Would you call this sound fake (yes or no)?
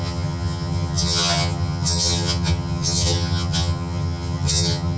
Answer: yes